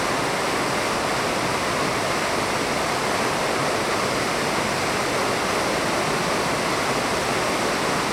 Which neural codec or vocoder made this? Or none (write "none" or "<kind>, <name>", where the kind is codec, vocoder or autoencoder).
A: none